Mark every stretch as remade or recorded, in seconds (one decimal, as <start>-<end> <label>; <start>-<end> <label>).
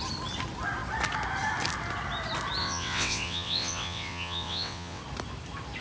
0.0-2.6 recorded; 2.6-5.0 remade; 5.0-5.8 recorded